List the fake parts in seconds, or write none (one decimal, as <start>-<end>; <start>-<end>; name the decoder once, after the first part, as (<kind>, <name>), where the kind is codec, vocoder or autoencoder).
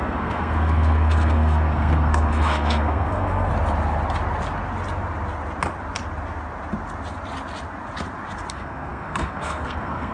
0.0-3.5 (codec, SNAC); 8.5-10.1